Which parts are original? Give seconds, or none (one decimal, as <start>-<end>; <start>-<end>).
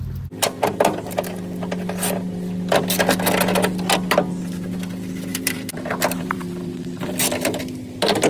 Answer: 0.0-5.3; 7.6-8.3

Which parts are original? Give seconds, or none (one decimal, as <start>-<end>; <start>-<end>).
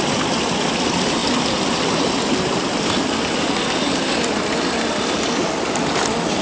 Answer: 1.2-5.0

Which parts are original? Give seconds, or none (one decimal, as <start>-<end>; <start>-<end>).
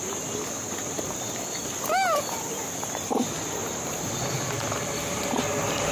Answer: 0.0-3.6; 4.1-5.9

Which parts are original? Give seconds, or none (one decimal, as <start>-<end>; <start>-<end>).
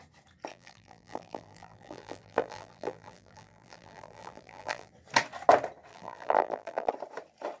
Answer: 0.0-0.5; 4.9-5.9; 6.9-7.6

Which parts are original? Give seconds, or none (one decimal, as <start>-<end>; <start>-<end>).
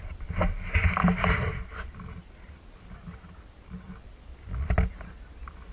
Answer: 0.0-5.7